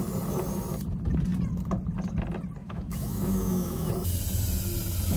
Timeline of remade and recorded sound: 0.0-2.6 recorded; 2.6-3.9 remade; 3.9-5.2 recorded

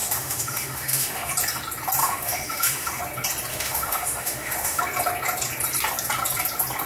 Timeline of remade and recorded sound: 0.0-1.3 remade; 1.3-2.0 recorded; 2.0-3.0 remade; 3.0-3.5 recorded; 3.5-4.8 remade; 4.8-6.9 recorded

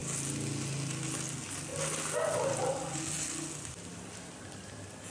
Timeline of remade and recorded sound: 0.0-5.1 recorded

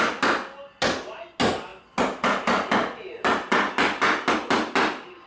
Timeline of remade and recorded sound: 0.0-5.3 recorded